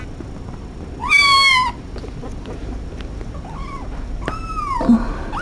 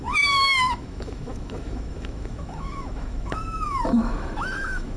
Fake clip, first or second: second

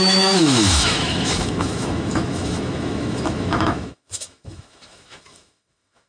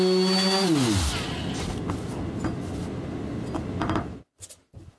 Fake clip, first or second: first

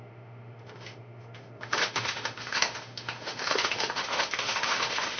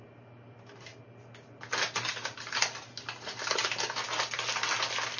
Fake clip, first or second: first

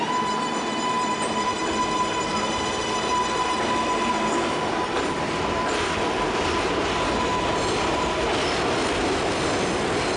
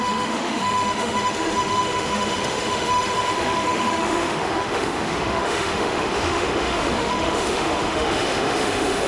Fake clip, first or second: second